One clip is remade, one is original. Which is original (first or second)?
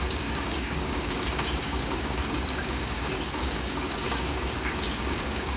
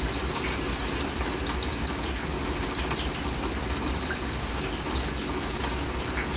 second